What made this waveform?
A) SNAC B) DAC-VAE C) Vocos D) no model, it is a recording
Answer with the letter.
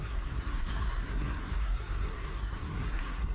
A